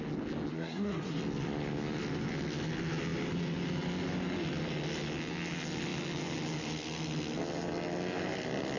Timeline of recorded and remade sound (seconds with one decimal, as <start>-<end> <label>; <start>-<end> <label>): 0.0-0.5 recorded; 0.5-1.2 remade; 1.2-8.8 recorded